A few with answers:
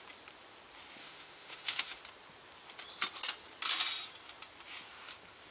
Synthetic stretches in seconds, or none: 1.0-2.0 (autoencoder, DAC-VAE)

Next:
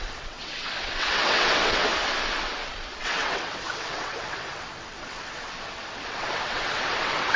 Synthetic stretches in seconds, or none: 0.0-1.9 (vocoder, WaveNeXt); 3.0-7.4

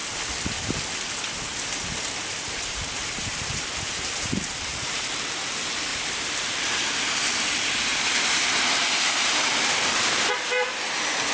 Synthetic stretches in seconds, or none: 1.5-5.1 (vocoder, BigVGAN v2); 5.9-6.6; 7.9-10.2

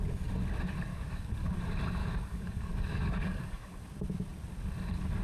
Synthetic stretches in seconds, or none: 0.9-1.6 (codec, DAC); 2.0-3.8

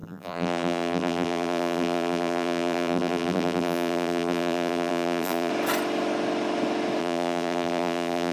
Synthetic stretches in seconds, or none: 0.0-5.5 (vocoder, BigVGAN v2); 7.0-8.3

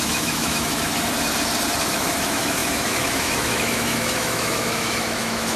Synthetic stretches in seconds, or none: 0.0-0.9 (autoencoder, DAC-VAE); 1.9-5.6

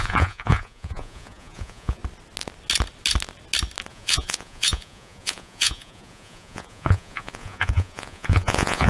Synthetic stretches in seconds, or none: 0.0-2.0 (vocoder, Vocos); 3.9-8.9